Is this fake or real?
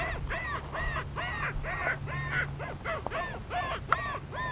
real